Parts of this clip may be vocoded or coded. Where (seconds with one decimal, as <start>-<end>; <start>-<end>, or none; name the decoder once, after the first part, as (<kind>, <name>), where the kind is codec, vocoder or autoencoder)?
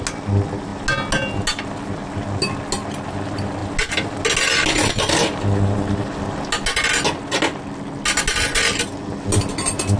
none